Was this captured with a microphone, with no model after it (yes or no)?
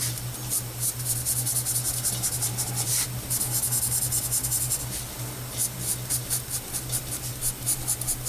yes